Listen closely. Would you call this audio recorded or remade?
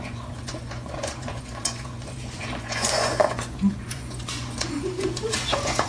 remade